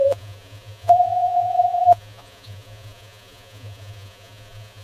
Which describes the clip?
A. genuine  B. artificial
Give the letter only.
B